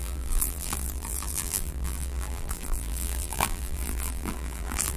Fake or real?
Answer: fake